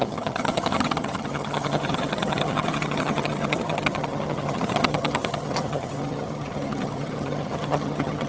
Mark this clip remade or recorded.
remade